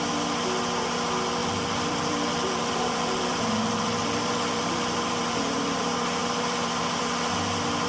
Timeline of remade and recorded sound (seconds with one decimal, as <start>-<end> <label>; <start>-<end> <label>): 0.0-1.4 recorded; 1.4-5.8 remade; 5.8-6.2 recorded; 6.2-7.0 remade; 7.0-7.9 recorded